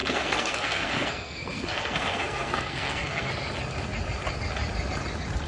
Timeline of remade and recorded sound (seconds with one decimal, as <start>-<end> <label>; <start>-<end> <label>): 0.0-3.3 remade; 3.3-5.5 recorded